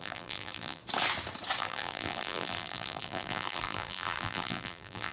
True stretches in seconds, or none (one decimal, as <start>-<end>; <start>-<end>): 0.8-1.6